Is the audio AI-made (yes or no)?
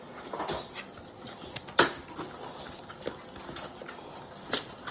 no